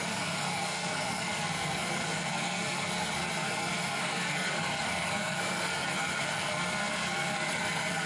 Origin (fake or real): fake